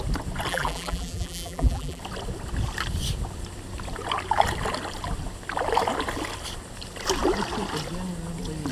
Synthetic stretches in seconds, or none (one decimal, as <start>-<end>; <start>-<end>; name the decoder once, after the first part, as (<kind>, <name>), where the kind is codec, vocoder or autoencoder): 0.5-2.0 (vocoder, BigVGAN v2)